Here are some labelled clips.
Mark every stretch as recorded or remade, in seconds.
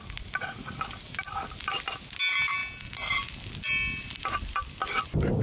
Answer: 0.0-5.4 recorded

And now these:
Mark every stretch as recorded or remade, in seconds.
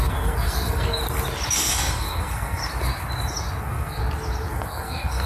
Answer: 0.0-1.0 remade; 1.0-1.6 recorded; 1.6-2.6 remade; 2.6-3.6 recorded; 3.6-4.0 remade; 4.0-4.5 recorded; 4.5-5.3 remade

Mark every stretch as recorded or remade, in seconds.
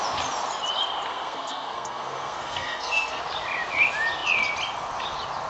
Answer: 0.0-1.1 recorded; 1.1-3.2 remade; 3.2-5.5 recorded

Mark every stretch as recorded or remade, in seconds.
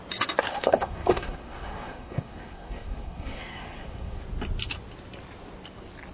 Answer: 0.0-0.5 recorded; 0.5-4.2 remade; 4.2-6.1 recorded